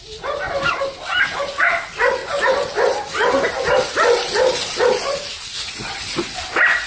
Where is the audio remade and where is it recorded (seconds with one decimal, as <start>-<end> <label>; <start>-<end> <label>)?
0.0-6.9 recorded